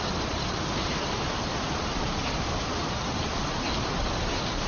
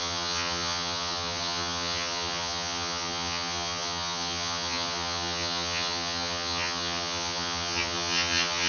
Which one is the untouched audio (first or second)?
first